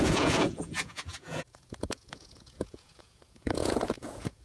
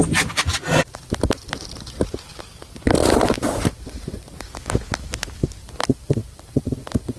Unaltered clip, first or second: second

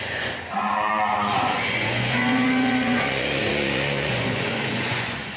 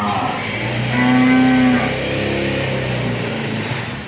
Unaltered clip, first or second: second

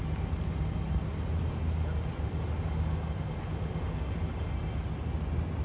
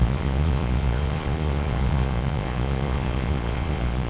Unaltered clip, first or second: first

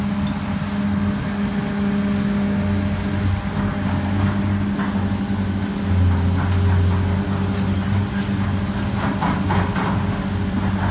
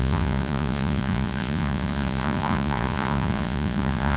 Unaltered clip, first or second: first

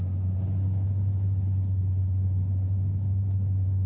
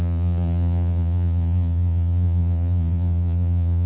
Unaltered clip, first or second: first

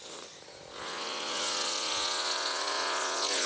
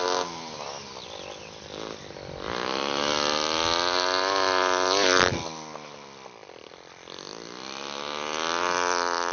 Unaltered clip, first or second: second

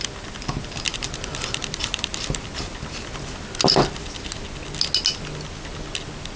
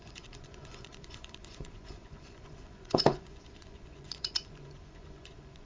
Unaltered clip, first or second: first